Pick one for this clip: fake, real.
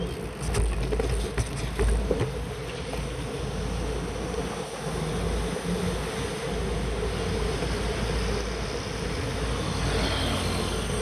real